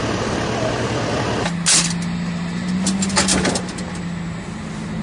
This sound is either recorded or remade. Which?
recorded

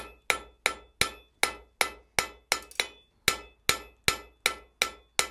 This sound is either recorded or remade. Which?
recorded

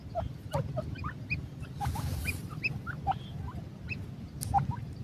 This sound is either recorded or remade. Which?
recorded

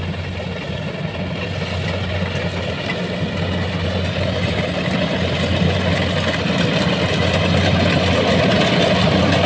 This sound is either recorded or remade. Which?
recorded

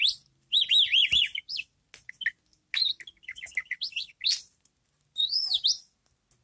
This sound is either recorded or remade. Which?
recorded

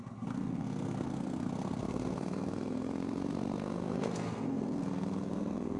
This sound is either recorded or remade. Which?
remade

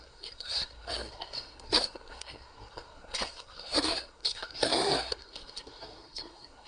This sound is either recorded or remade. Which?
remade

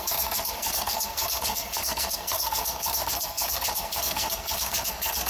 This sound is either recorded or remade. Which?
remade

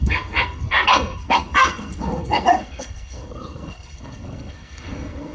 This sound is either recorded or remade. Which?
remade